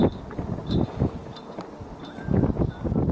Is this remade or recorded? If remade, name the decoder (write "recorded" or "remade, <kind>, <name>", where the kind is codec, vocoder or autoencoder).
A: recorded